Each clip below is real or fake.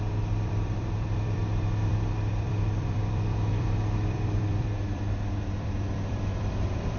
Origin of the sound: fake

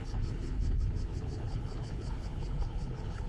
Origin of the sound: fake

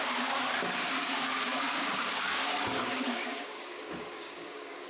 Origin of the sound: fake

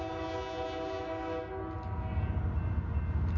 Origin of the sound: real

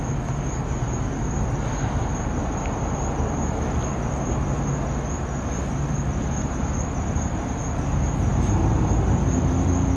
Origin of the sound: real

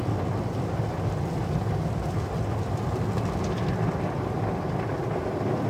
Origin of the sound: real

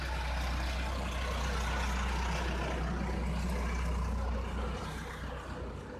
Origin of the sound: real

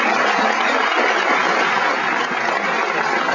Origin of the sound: real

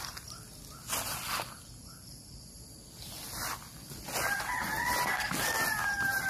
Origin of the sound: real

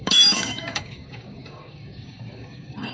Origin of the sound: fake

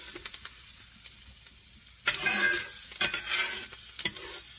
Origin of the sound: real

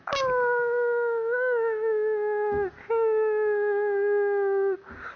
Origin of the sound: real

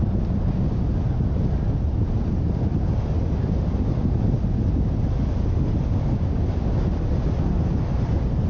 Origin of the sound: real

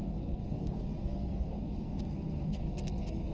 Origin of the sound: fake